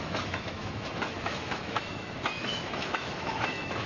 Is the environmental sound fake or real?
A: fake